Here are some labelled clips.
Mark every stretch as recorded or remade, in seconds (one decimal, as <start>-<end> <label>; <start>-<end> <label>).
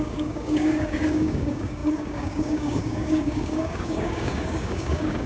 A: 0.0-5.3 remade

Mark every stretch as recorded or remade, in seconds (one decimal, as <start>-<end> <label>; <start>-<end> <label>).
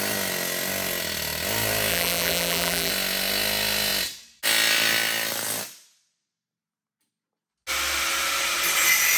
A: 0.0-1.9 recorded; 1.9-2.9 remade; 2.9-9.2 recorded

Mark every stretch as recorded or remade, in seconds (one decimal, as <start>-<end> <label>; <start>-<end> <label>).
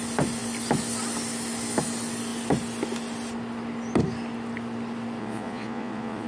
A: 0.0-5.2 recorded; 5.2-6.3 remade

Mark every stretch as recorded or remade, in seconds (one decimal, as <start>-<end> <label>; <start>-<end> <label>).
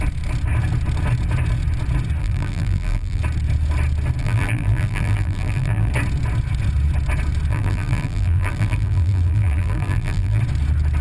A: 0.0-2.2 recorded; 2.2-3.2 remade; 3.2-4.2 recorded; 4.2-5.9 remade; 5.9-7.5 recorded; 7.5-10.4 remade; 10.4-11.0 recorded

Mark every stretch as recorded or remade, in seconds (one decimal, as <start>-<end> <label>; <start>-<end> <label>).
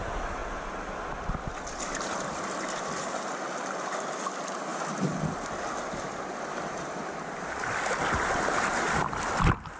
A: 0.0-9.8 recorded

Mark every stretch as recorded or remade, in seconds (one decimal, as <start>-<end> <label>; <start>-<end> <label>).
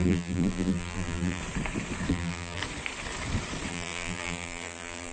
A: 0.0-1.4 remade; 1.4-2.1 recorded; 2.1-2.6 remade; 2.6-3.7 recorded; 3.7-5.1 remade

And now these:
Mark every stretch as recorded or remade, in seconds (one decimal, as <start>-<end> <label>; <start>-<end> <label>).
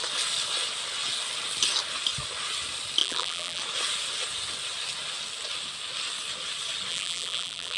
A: 0.0-3.0 recorded; 3.0-3.6 remade; 3.6-6.9 recorded; 6.9-7.8 remade